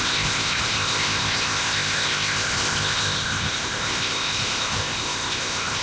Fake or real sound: fake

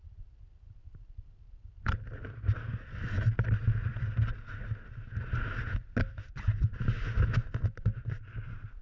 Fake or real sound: real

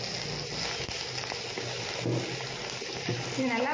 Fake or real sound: real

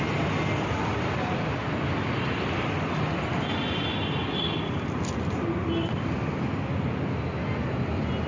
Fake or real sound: real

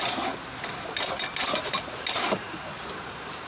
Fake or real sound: real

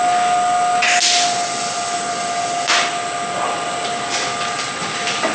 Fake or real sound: real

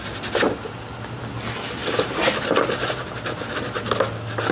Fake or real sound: real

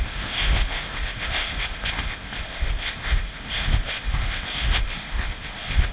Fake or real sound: fake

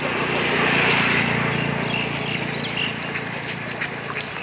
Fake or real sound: real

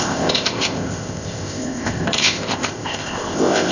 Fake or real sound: fake